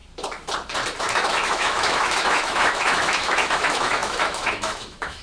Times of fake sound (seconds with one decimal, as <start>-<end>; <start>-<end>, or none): 1.0-5.2